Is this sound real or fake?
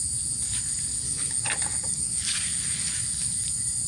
real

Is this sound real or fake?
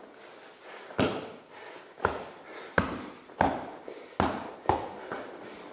real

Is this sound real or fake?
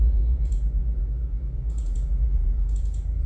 fake